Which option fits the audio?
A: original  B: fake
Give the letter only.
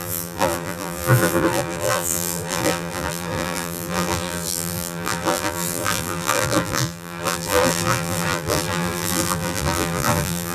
B